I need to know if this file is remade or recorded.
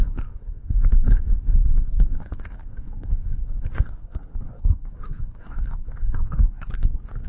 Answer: remade